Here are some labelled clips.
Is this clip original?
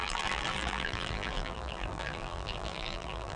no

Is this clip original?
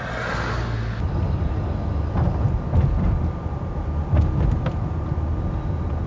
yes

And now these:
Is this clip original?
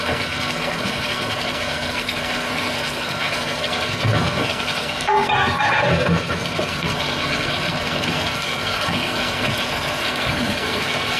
no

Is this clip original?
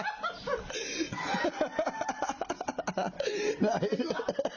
yes